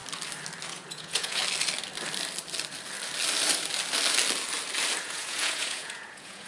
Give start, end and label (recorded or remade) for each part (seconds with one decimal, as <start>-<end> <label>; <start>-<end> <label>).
0.0-0.7 recorded; 0.7-1.4 remade; 1.4-5.0 recorded; 5.0-6.5 remade

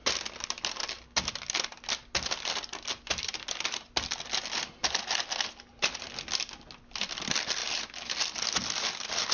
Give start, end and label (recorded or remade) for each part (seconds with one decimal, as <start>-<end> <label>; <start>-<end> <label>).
0.0-9.3 recorded

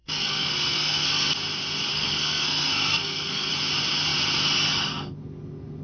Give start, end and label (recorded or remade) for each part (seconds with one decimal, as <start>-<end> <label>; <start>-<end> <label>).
0.0-1.3 remade; 1.3-1.9 recorded; 1.9-3.5 remade; 3.5-5.8 recorded

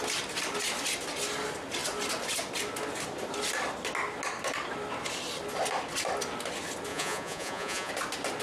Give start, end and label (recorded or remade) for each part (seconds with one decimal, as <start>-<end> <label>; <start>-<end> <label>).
0.0-6.9 recorded; 6.9-7.9 remade; 7.9-8.4 recorded

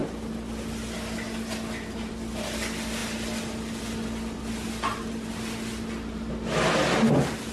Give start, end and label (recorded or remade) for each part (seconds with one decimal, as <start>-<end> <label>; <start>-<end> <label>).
0.0-7.5 recorded

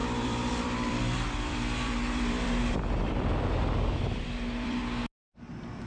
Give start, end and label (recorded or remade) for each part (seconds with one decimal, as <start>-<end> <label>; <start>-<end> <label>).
0.0-4.8 remade; 4.8-5.9 recorded